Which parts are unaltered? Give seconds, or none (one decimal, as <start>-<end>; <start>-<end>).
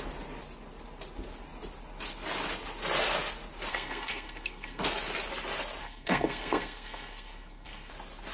0.0-3.7; 4.8-5.8; 7.9-8.3